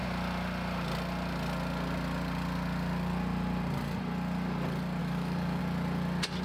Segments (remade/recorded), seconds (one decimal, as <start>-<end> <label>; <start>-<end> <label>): 0.0-5.0 recorded; 5.0-5.6 remade; 5.6-6.4 recorded